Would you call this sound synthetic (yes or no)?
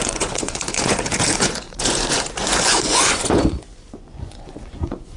yes